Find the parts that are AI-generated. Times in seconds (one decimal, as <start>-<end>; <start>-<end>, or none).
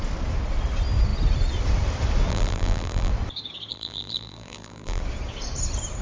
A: 2.3-3.1; 3.7-5.0